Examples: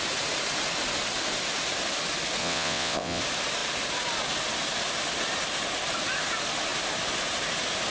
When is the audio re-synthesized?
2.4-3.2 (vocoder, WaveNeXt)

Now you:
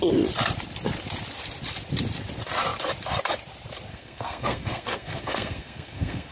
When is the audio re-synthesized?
3.9-6.3 (codec, SNAC)

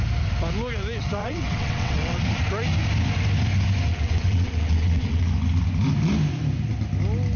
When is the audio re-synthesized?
1.2-2.2 (vocoder, WaveNeXt); 3.9-5.3